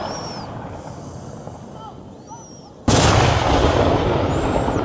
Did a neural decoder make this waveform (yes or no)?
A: no